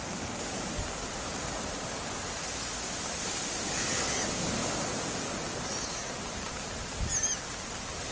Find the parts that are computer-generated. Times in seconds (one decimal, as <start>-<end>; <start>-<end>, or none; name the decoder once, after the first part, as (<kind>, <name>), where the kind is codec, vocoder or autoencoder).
none